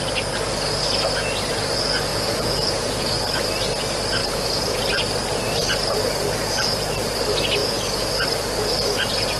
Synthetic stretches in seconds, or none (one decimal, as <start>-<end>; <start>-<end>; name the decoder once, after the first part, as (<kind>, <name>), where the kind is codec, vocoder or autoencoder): 2.1-3.1 (vocoder, Vocos); 4.2-4.8; 7.6-8.1